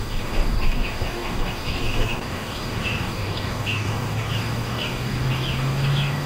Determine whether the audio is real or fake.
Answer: fake